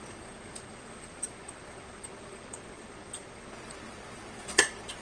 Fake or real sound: fake